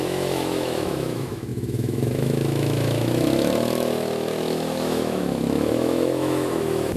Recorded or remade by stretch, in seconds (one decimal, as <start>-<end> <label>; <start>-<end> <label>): 0.0-7.0 remade